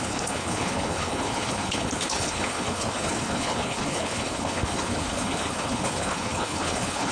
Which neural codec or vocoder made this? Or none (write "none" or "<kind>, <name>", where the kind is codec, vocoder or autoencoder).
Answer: codec, HILCodec